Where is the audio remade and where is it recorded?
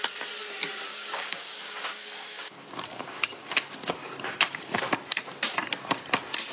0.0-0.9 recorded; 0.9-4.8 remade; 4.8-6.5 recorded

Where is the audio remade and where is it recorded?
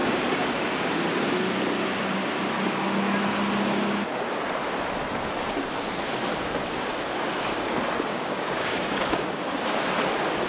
0.0-1.0 remade; 1.0-8.1 recorded; 8.1-9.4 remade; 9.4-10.5 recorded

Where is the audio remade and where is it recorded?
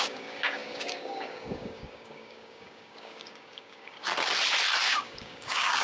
0.0-4.1 remade; 4.1-4.8 recorded; 4.8-5.8 remade